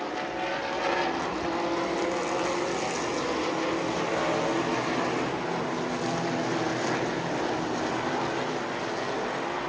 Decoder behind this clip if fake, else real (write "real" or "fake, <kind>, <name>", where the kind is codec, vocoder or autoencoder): real